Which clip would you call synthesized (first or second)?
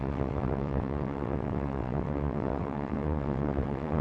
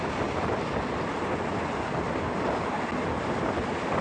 first